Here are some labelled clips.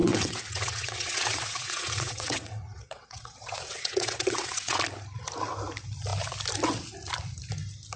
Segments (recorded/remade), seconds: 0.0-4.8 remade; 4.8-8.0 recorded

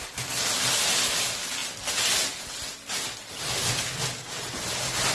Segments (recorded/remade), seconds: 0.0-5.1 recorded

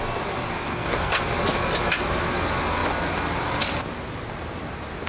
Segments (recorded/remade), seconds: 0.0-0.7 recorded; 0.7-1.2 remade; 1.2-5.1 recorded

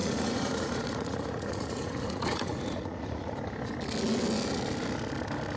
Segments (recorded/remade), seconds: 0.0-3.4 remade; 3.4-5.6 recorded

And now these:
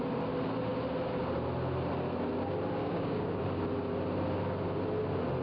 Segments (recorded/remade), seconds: 0.0-2.8 recorded; 2.8-3.4 remade; 3.4-5.4 recorded